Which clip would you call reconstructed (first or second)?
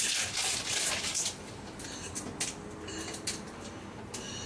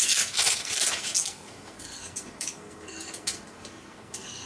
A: second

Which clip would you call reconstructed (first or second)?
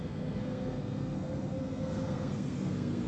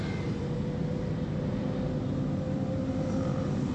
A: first